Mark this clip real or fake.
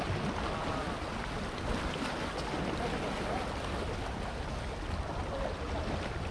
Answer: real